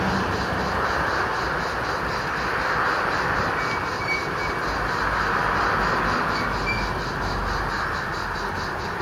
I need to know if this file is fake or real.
real